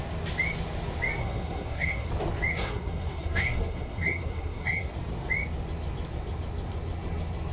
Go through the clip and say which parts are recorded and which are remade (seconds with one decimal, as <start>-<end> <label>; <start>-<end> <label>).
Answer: 0.0-1.2 recorded; 1.2-2.1 remade; 2.1-2.5 recorded; 2.5-4.9 remade; 4.9-7.5 recorded